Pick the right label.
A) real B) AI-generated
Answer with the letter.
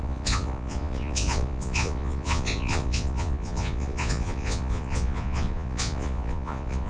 B